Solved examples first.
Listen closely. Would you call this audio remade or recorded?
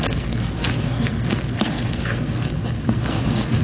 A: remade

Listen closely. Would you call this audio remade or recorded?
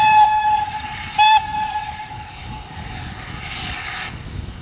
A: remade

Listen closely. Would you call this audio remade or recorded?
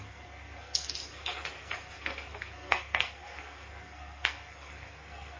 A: remade